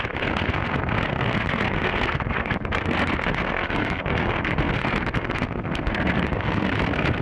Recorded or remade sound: remade